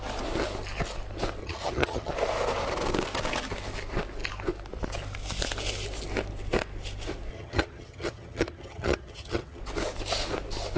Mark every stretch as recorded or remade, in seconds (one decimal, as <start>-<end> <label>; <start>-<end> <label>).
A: 0.0-1.4 recorded; 1.4-2.1 remade; 2.1-7.3 recorded; 7.3-9.6 remade; 9.6-10.8 recorded